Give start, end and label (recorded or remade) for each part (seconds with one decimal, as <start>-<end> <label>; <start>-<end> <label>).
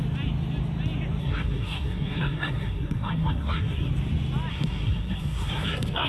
0.0-1.2 recorded; 1.2-3.9 remade; 3.9-4.5 recorded; 4.5-6.1 remade